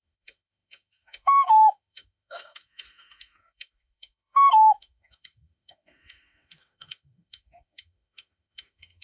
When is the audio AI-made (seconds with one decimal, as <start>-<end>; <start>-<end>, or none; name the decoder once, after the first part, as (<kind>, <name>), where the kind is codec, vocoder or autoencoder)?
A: 0.0-9.0 (autoencoder, DAC-VAE)